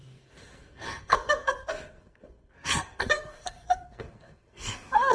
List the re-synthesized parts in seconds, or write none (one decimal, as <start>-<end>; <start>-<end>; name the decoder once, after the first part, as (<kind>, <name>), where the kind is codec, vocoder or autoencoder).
0.0-5.1 (codec, SNAC)